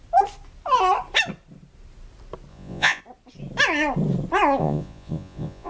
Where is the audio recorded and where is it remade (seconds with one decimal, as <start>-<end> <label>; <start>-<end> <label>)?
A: 0.0-2.5 recorded; 2.5-3.0 remade; 3.0-4.6 recorded; 4.6-5.7 remade

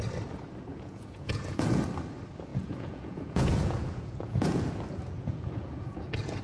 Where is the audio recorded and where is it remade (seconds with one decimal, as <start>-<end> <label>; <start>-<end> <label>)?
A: 0.0-0.7 recorded; 0.7-1.8 remade; 1.8-2.5 recorded; 2.5-6.4 remade

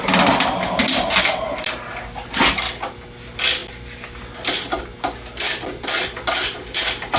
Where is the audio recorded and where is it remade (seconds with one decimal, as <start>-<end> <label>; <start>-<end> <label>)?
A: 0.0-7.2 recorded

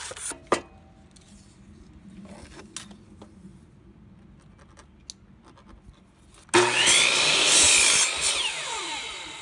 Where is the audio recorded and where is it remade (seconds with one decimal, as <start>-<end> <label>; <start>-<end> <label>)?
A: 0.0-9.4 recorded

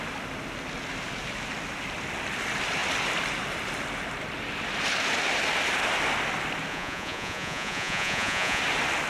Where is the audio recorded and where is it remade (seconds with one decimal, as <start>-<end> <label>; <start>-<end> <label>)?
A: 0.0-6.7 recorded; 6.7-8.6 remade; 8.6-9.1 recorded

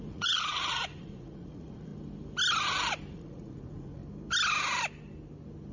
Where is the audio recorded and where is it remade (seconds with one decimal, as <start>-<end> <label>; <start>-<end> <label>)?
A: 0.0-1.9 remade; 1.9-3.1 recorded; 3.1-4.0 remade; 4.0-5.7 recorded

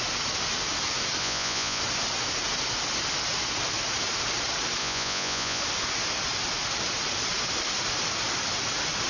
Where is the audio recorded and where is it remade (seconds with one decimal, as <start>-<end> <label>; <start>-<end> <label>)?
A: 0.0-1.2 recorded; 1.2-1.8 remade; 1.8-4.8 recorded; 4.8-5.6 remade; 5.6-9.1 recorded

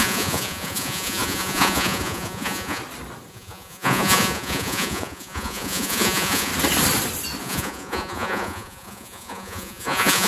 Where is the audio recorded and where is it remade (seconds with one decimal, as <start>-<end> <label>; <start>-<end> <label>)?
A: 0.0-2.8 remade; 2.8-3.3 recorded; 3.3-6.5 remade; 6.5-7.4 recorded; 7.4-10.3 remade